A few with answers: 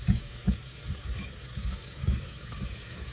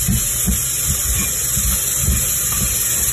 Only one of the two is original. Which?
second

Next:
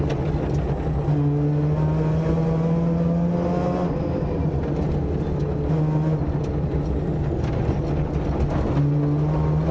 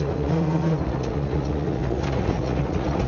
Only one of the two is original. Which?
first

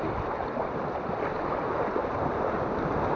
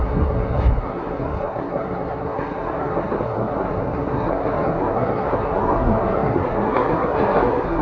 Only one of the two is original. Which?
first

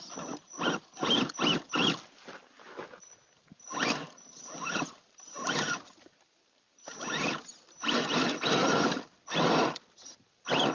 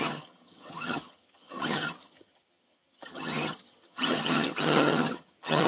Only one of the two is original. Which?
first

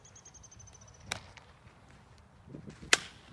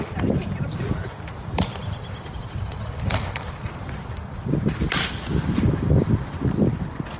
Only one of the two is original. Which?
first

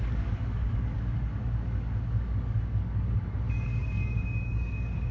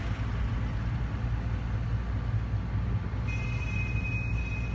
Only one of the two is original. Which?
second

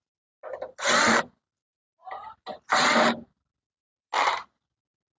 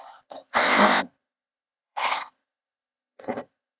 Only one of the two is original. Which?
first